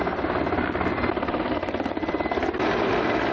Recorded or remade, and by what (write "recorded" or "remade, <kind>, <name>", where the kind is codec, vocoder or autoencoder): recorded